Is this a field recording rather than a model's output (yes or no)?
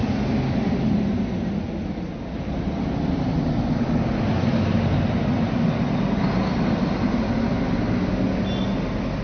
yes